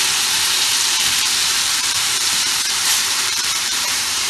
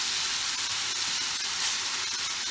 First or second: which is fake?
first